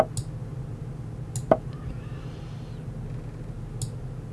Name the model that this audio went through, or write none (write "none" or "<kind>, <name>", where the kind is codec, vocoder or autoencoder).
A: none